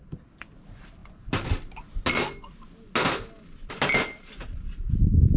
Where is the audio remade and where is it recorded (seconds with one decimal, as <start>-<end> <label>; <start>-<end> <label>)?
0.0-5.4 recorded